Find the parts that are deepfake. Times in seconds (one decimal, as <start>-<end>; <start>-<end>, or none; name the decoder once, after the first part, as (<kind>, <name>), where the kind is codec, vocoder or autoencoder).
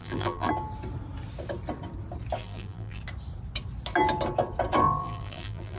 0.0-0.5 (vocoder, BigVGAN v2); 2.4-3.0; 5.0-5.8